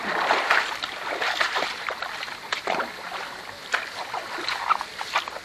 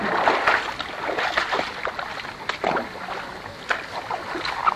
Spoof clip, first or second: first